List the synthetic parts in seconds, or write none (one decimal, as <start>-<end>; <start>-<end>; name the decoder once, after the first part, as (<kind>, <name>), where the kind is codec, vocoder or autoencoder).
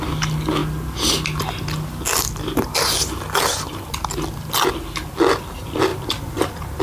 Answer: 5.9-6.8 (vocoder, BigVGAN v2)